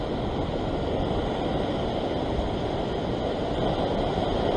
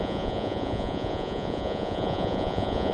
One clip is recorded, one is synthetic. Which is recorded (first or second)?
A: first